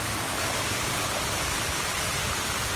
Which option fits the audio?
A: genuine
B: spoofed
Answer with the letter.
A